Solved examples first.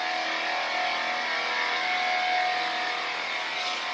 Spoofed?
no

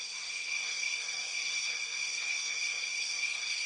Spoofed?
yes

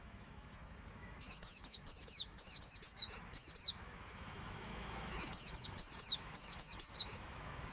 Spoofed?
yes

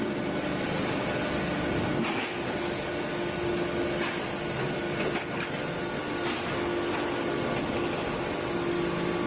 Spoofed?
no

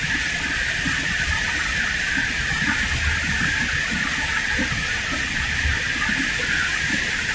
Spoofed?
no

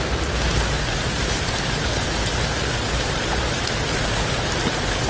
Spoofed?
no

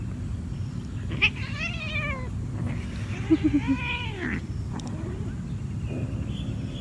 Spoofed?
no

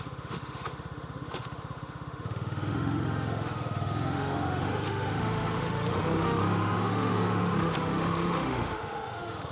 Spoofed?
yes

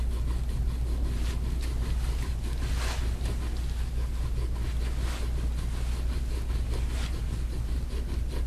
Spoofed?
no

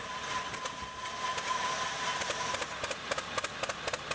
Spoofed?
no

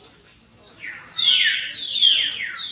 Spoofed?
no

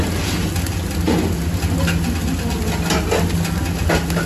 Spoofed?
no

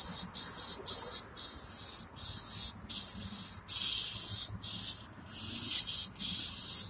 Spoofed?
no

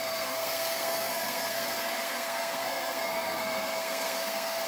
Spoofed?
yes